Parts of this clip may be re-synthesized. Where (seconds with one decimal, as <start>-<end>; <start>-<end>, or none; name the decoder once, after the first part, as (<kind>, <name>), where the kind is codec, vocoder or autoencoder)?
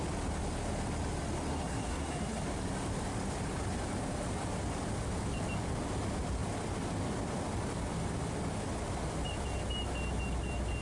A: 1.5-2.4 (codec, SNAC)